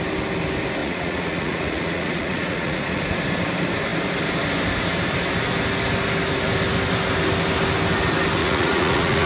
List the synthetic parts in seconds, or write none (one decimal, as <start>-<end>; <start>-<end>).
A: 0.8-3.0; 8.4-9.3